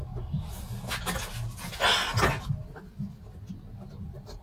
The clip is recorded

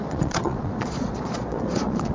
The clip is remade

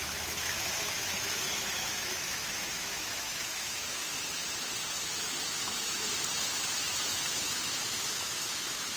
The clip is remade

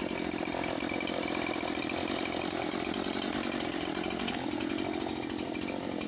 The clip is recorded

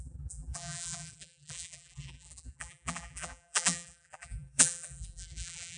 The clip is remade